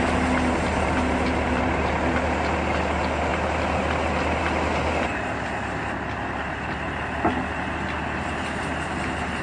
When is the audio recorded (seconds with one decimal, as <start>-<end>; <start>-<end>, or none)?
0.0-9.4